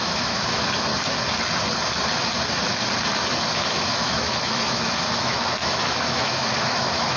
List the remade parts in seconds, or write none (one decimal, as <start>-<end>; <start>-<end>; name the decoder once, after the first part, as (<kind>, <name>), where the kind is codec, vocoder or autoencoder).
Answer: 0.0-0.9 (autoencoder, DAC-VAE); 3.5-7.2